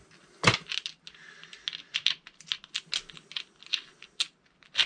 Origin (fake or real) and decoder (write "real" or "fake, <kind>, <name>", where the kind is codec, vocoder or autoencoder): real